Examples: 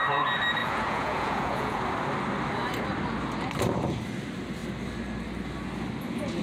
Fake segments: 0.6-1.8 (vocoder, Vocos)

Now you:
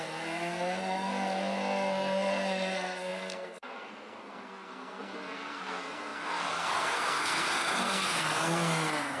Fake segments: 0.0-9.2 (codec, SNAC)

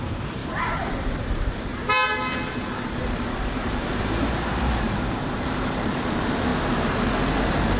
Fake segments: 0.0-0.4 (vocoder, BigVGAN v2); 1.1-1.7; 3.0-6.5; 7.2-7.8

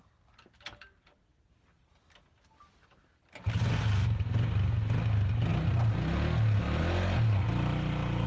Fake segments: none

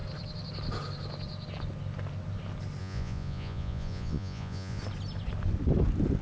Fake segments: 2.8-4.8 (vocoder, Vocos)